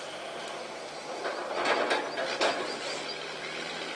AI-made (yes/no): no